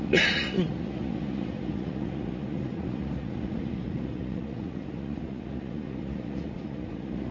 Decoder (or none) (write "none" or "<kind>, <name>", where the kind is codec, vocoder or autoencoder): vocoder, Vocos